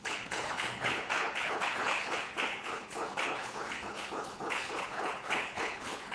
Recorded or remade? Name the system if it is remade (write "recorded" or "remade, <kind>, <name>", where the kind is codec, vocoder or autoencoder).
remade, codec, HILCodec